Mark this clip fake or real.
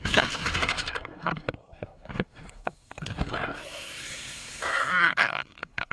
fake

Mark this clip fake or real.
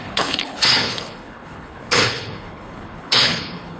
fake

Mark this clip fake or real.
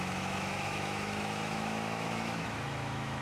fake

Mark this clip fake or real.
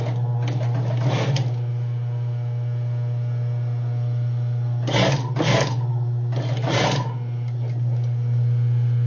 real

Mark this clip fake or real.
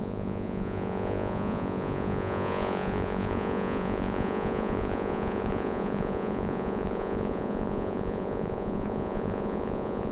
fake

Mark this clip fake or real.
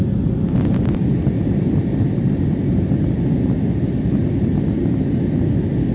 real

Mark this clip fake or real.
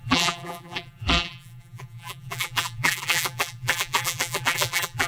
fake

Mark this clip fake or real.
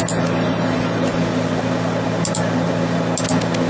real